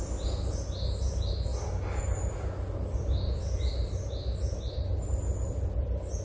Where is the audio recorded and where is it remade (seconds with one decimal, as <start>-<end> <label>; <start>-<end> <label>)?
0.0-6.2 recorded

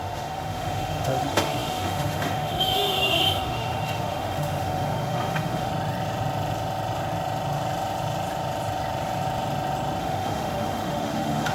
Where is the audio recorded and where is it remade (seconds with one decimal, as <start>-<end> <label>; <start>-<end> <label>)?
0.0-5.7 remade; 5.7-10.0 recorded; 10.0-11.5 remade

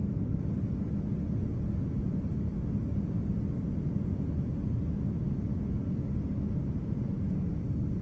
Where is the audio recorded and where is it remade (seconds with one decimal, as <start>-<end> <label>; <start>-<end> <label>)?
0.0-8.0 recorded

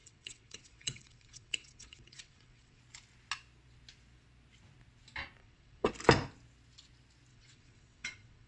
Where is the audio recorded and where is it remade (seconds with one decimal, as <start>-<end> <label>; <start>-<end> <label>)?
0.0-2.8 remade; 2.8-5.4 recorded; 5.4-5.9 remade; 5.9-7.3 recorded; 7.3-8.5 remade

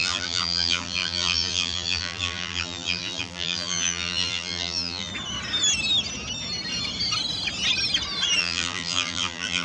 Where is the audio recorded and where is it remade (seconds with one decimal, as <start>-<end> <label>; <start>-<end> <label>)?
0.0-5.1 remade; 5.1-8.4 recorded; 8.4-9.6 remade